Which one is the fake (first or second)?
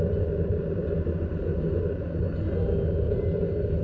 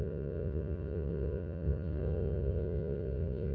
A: second